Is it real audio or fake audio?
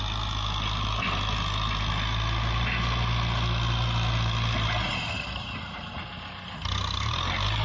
real